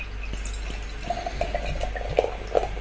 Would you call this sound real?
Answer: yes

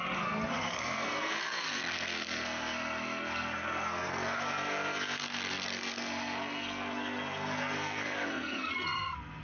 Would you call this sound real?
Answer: no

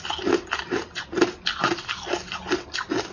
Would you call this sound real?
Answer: yes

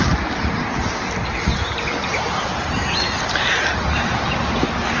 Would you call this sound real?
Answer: yes